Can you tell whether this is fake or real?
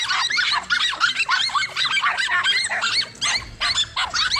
real